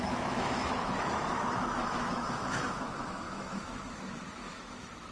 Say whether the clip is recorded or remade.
remade